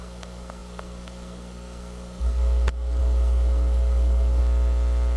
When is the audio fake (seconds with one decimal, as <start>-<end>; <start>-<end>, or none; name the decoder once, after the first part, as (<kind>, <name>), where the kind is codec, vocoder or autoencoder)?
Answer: 0.0-4.4 (codec, SNAC)